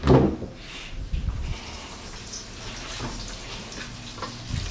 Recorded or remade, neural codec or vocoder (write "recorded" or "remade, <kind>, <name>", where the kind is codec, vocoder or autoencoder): recorded